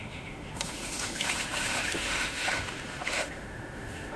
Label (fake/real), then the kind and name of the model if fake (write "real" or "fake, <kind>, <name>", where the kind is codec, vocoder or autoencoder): fake, autoencoder, DAC-VAE